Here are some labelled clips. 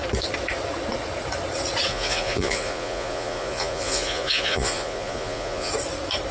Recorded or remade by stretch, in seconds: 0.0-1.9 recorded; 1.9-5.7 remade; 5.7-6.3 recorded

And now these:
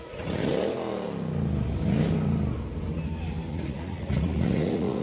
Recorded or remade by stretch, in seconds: 0.0-0.5 remade; 0.5-3.5 recorded; 3.5-5.0 remade

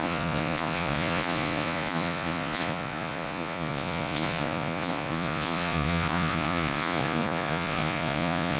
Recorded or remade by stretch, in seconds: 0.0-8.6 remade

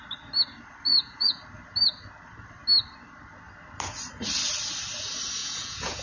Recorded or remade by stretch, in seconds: 0.0-0.9 recorded; 0.9-1.4 remade; 1.4-5.4 recorded; 5.4-6.0 remade

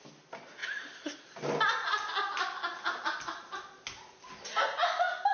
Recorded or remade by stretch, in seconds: 0.0-5.3 recorded

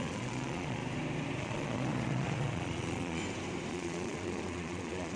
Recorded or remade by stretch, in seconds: 0.0-0.8 remade; 0.8-1.4 recorded; 1.4-3.2 remade; 3.2-3.7 recorded; 3.7-5.2 remade